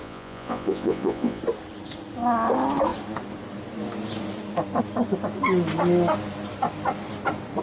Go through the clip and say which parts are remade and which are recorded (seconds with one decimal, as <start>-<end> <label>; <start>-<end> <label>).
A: 0.0-1.4 remade; 1.4-7.6 recorded